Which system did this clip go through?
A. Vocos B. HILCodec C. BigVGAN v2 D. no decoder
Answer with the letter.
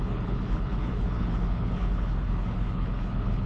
B